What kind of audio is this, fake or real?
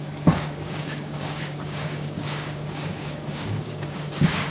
fake